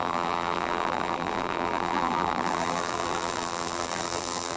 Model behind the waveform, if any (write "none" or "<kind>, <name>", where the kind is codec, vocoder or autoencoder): vocoder, BigVGAN v2